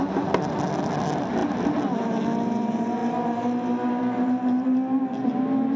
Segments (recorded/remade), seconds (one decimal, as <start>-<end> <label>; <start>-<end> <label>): 0.0-5.8 recorded